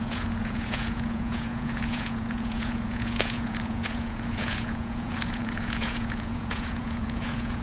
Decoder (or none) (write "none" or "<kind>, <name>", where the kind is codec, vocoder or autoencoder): vocoder, Vocos